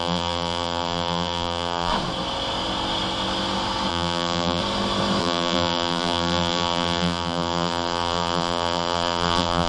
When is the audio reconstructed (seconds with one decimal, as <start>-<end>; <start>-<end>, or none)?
0.0-1.9; 3.9-4.6; 5.2-9.7